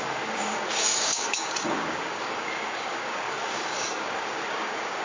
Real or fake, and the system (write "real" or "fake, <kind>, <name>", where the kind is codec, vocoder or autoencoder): fake, codec, DAC